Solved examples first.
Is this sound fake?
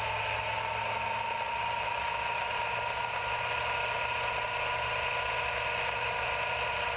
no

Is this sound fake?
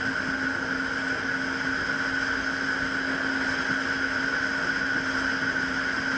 no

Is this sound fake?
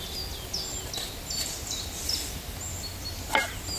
no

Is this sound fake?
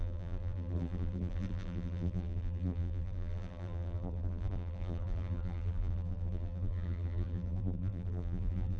yes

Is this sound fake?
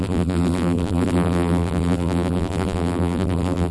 yes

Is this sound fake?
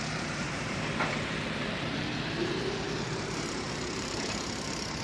yes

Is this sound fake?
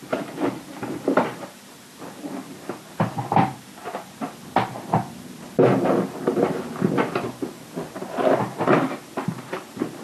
yes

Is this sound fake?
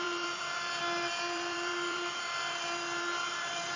yes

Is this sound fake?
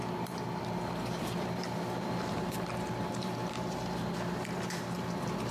yes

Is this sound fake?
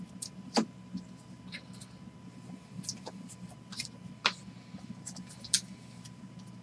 no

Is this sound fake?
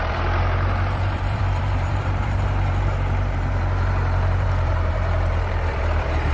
yes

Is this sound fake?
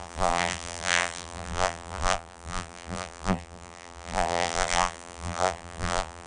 yes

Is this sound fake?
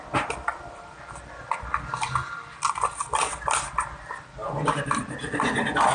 yes